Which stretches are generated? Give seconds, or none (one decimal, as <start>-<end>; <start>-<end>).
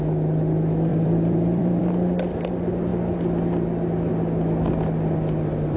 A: 0.9-1.8